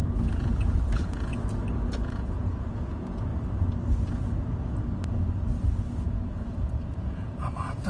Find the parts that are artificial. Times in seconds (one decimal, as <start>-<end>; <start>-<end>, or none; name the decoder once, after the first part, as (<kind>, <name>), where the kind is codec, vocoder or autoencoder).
0.0-1.3 (vocoder, Vocos); 1.9-3.3; 6.0-7.9